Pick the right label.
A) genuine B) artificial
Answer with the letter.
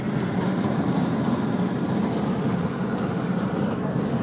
A